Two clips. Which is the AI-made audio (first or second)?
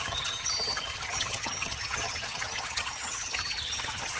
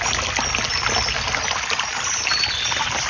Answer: first